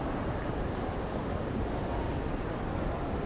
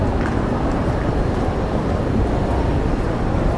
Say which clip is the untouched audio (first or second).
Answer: first